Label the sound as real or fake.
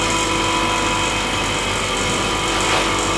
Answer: real